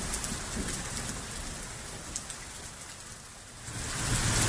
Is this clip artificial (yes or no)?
no